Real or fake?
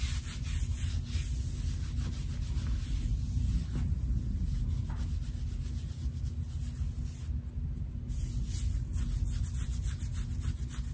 real